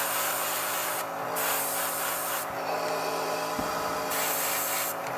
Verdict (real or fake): real